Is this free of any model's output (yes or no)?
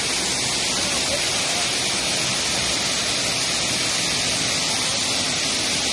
yes